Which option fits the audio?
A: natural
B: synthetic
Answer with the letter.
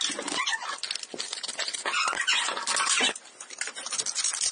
A